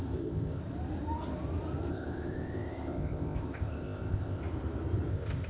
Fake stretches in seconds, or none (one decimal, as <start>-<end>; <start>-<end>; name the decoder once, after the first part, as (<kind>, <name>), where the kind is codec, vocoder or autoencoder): 0.0-0.6 (codec, ZipCodec); 1.9-4.4; 5.1-5.5